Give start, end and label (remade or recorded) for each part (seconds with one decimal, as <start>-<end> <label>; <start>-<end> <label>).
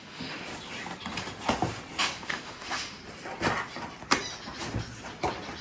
0.0-0.5 remade; 0.5-2.0 recorded; 2.0-3.0 remade; 3.0-5.6 recorded